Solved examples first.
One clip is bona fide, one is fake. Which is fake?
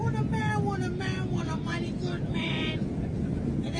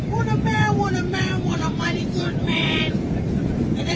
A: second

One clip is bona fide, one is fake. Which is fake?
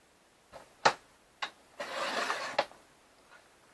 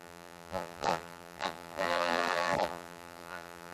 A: second